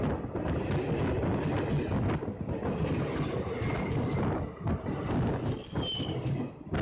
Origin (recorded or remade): recorded